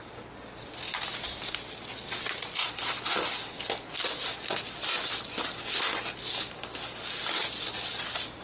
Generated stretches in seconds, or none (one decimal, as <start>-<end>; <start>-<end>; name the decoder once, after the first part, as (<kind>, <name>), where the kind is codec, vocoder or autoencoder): none